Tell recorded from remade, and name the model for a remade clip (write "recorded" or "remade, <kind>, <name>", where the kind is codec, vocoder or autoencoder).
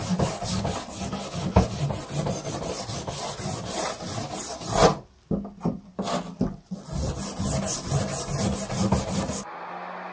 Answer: recorded